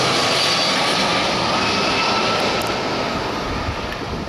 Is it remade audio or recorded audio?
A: recorded